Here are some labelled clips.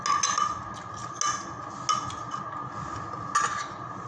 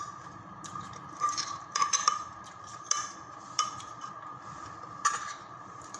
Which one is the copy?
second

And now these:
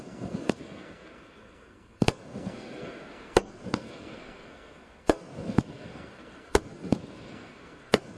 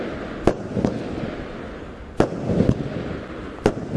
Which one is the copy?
first